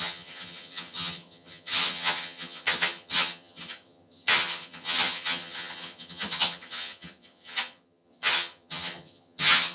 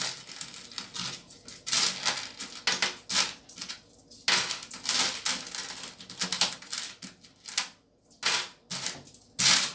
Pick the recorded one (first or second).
second